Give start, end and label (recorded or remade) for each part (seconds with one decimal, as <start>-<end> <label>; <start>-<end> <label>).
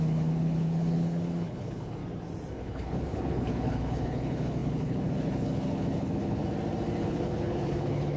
0.0-2.0 remade; 2.0-2.5 recorded; 2.5-6.4 remade; 6.4-7.0 recorded; 7.0-8.2 remade